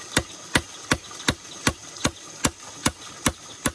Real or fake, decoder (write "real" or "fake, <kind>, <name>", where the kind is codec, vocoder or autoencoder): real